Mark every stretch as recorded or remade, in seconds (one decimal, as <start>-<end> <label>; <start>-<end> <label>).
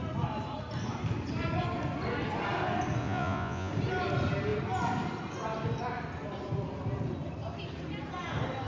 0.0-3.0 recorded; 3.0-3.7 remade; 3.7-8.7 recorded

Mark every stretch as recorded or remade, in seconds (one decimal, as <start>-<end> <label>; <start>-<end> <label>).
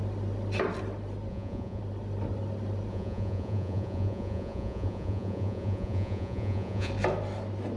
0.0-1.3 recorded; 1.3-1.8 remade; 1.8-2.9 recorded; 2.9-6.9 remade; 6.9-7.8 recorded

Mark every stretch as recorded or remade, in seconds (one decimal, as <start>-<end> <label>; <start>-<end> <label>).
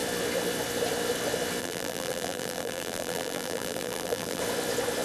0.0-1.6 recorded; 1.6-4.4 remade; 4.4-5.0 recorded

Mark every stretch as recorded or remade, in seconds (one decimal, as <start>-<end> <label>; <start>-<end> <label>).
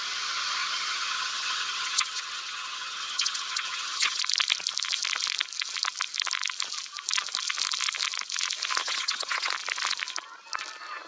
0.0-0.6 recorded; 0.6-4.2 remade; 4.2-8.8 recorded; 8.8-9.5 remade; 9.5-11.1 recorded